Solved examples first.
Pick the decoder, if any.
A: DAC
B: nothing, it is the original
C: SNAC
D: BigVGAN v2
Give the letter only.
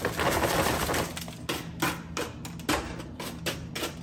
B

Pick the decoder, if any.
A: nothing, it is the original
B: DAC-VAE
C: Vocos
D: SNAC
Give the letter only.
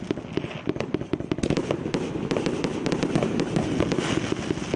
A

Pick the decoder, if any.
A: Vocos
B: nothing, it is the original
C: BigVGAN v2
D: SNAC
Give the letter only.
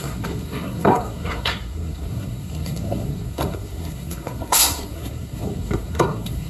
D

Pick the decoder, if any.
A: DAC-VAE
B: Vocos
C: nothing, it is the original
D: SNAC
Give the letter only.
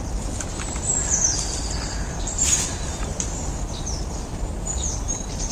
C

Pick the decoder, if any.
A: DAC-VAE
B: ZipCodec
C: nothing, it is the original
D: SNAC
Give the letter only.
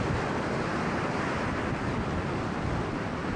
C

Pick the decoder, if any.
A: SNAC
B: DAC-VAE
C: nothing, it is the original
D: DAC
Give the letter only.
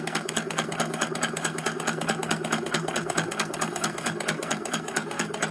A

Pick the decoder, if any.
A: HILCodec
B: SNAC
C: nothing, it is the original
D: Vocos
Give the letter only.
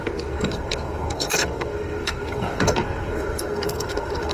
B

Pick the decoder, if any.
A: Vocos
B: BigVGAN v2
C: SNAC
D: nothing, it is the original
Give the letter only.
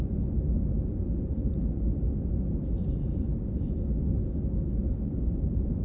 D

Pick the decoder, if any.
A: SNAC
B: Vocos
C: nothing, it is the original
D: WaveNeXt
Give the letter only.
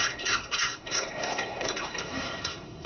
A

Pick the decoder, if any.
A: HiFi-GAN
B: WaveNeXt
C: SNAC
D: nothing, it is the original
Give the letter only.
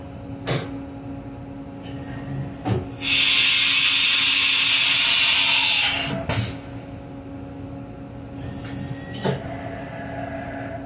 D